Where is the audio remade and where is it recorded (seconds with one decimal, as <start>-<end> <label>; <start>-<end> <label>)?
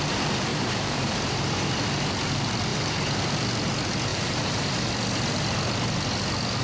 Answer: 0.0-0.5 recorded; 0.5-1.7 remade; 1.7-2.7 recorded; 2.7-3.2 remade; 3.2-4.1 recorded; 4.1-4.9 remade; 4.9-6.6 recorded